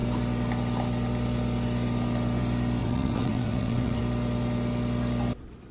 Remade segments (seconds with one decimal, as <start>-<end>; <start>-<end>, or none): 2.8-4.0